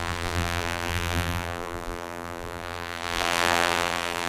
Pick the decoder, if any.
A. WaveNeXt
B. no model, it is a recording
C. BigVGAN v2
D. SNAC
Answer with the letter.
C